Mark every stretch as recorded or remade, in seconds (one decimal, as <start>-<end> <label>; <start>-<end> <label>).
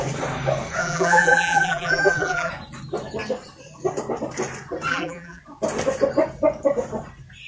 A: 0.0-0.8 recorded; 0.8-2.5 remade; 2.5-4.9 recorded; 4.9-5.4 remade; 5.4-7.5 recorded